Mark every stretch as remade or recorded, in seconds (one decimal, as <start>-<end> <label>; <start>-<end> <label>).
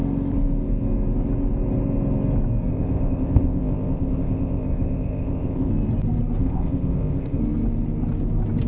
0.0-2.7 recorded; 2.7-5.7 remade; 5.7-6.4 recorded; 6.4-7.4 remade; 7.4-8.7 recorded